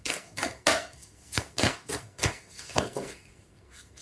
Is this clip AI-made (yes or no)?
yes